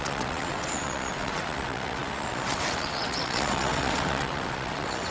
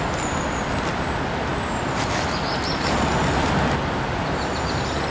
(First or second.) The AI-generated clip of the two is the first